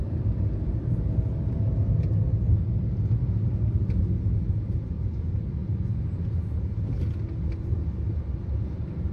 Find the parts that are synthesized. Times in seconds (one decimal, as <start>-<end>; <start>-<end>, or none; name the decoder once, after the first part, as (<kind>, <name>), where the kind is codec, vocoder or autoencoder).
none